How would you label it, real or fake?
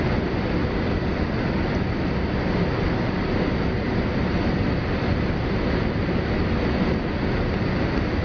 real